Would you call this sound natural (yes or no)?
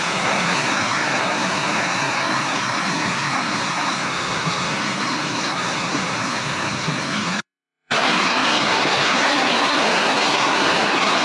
no